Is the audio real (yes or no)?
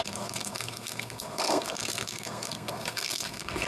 no